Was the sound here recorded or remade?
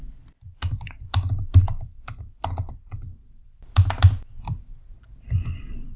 remade